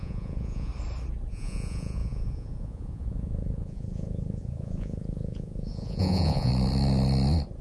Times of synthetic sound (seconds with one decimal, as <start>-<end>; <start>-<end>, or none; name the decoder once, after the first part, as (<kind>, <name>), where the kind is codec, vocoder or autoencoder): 0.0-0.7 (vocoder, Vocos); 1.3-6.5

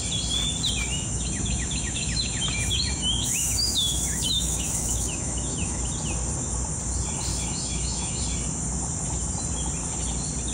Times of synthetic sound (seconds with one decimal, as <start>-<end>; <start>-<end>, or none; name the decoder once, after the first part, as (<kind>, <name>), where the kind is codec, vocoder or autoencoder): 0.9-5.8 (autoencoder, DAC-VAE); 7.3-8.2

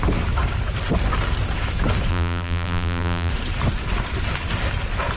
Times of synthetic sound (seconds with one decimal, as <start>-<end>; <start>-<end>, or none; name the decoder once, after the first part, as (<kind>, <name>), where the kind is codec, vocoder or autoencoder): 2.1-3.3 (vocoder, BigVGAN v2)

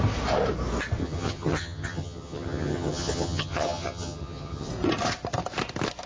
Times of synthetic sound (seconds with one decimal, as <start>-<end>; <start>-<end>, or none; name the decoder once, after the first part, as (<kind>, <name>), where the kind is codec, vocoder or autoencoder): 1.0-4.7 (vocoder, HiFi-GAN)

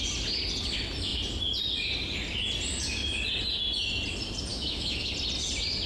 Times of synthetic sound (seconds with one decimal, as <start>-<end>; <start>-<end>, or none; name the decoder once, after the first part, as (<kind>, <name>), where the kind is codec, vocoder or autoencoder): 4.5-5.1 (autoencoder, DAC-VAE)